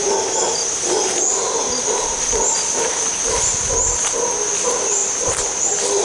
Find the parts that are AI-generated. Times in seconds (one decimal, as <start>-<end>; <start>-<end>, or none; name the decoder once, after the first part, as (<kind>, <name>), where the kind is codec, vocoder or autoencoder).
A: none